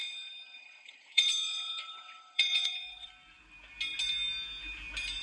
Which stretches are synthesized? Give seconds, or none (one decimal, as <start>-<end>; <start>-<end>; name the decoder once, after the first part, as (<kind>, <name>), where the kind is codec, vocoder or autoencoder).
0.0-3.1 (vocoder, WaveNeXt)